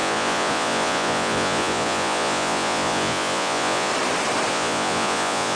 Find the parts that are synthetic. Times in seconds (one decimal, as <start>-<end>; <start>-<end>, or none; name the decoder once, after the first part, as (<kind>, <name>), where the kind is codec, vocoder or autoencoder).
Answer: 0.0-3.9 (vocoder, Vocos); 4.5-5.6